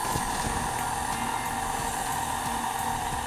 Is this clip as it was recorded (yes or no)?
yes